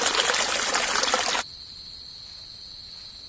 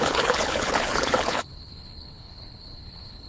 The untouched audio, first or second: first